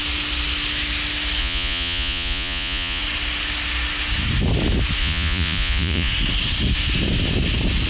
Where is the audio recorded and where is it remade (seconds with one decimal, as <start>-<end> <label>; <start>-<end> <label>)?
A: 0.0-1.4 recorded; 1.4-3.0 remade; 3.0-5.0 recorded; 5.0-6.1 remade; 6.1-7.9 recorded